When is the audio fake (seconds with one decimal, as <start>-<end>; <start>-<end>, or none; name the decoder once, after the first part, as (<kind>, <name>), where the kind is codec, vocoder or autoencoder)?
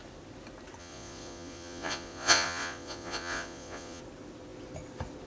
0.8-4.0 (vocoder, Vocos)